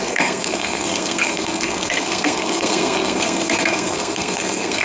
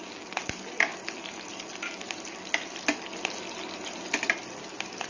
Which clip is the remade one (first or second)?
first